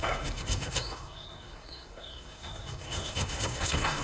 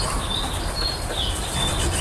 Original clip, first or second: second